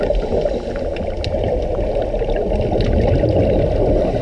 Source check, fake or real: real